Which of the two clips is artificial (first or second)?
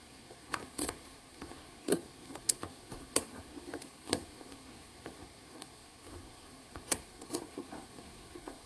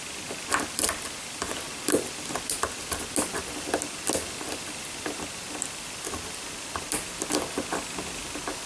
first